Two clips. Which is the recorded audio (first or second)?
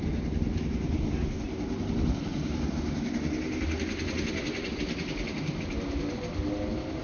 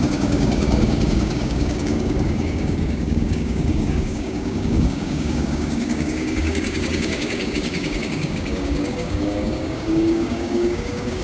first